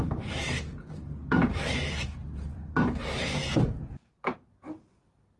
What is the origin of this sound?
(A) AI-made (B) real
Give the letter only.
A